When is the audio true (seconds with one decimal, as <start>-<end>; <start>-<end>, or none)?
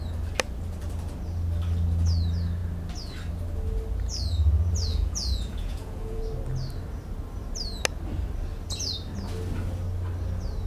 0.0-4.9; 6.2-10.7